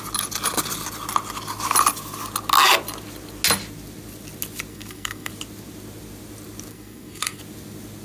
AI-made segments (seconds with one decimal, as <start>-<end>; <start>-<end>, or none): 4.7-5.3; 6.7-7.4